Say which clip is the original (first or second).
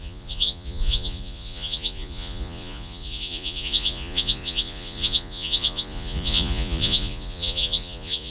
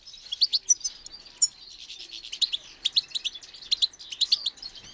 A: second